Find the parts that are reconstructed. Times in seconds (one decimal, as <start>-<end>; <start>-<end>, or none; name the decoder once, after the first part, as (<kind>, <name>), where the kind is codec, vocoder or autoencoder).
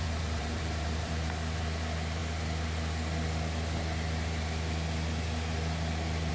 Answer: 0.0-1.3 (vocoder, BigVGAN v2)